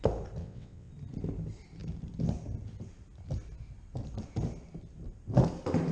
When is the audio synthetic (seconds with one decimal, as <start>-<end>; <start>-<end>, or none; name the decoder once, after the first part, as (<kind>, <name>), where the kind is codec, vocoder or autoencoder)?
0.4-0.9 (vocoder, WaveNeXt)